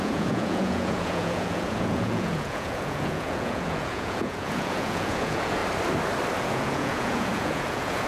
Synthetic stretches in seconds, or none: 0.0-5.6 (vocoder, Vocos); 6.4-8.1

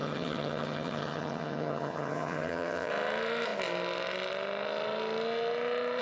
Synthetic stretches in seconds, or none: 0.0-2.9 (vocoder, HiFi-GAN)

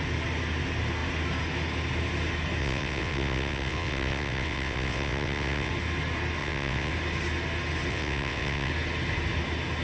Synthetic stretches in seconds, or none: 2.6-5.7 (vocoder, WaveNeXt); 6.4-6.9; 7.9-8.7

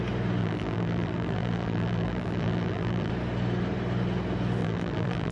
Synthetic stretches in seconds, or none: 0.4-3.1 (vocoder, BigVGAN v2); 4.6-5.3

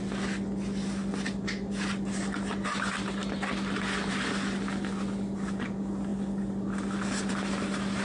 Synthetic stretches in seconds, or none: none